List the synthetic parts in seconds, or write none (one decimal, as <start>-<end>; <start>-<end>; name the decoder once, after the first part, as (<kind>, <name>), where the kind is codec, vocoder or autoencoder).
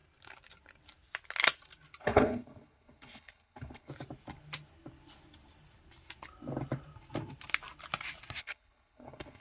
2.0-3.9 (codec, HILCodec); 8.4-9.4